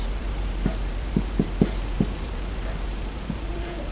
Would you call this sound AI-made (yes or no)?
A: yes